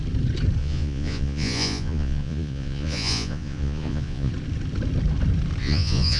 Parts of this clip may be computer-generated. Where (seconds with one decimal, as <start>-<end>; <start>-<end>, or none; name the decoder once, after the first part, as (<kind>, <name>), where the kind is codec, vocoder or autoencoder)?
0.6-4.3 (vocoder, Vocos); 5.6-6.2